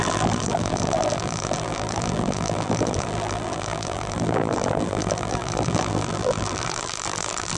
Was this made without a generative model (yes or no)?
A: no